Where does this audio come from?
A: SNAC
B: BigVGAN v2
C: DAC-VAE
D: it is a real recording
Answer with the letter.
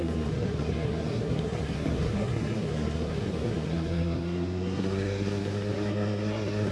A